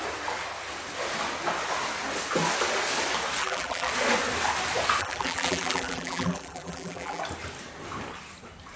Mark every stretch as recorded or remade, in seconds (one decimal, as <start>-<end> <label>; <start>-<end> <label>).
0.0-3.4 recorded; 3.4-3.9 remade; 3.9-5.0 recorded; 5.0-7.2 remade; 7.2-8.8 recorded